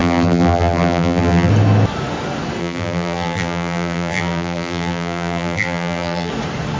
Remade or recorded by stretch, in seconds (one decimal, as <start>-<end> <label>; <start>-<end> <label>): 0.0-1.5 remade; 1.5-2.6 recorded; 2.6-6.3 remade; 6.3-6.8 recorded